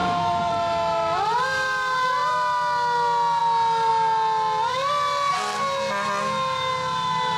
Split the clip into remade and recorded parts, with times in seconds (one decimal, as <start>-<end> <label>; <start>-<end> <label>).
0.0-0.5 remade; 0.5-7.4 recorded